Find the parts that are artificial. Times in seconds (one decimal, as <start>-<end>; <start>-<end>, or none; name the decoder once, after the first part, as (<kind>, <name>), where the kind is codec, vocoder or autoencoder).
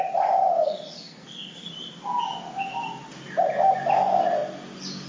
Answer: 0.5-1.7 (codec, SNAC)